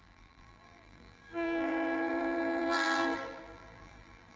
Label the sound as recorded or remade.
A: remade